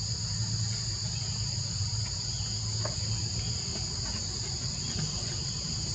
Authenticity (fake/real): real